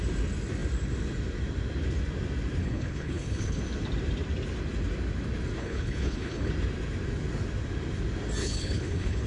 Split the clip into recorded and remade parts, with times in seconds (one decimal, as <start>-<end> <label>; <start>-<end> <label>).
0.0-2.6 recorded; 2.6-3.6 remade; 3.6-5.6 recorded; 5.6-6.5 remade; 6.5-8.4 recorded; 8.4-9.3 remade